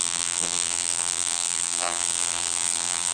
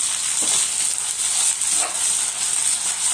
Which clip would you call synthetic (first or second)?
first